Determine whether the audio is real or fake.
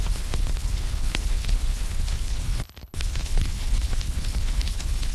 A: fake